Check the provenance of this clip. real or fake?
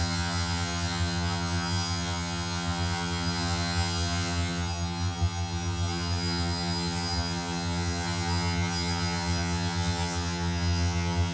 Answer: fake